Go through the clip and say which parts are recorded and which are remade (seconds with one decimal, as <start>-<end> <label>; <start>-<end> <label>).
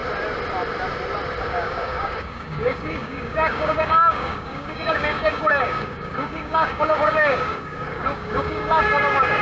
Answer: 0.0-1.4 recorded; 1.4-9.4 remade